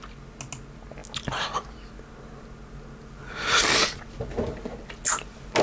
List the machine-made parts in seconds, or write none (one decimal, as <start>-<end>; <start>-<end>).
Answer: none